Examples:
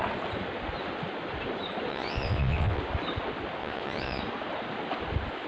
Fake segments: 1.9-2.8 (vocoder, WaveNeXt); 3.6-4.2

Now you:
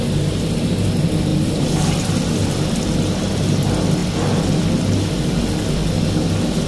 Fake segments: 1.3-2.7 (vocoder, BigVGAN v2)